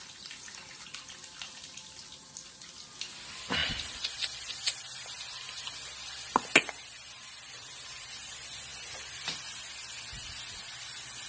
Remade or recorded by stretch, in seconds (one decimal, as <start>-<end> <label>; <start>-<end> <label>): 0.0-11.3 recorded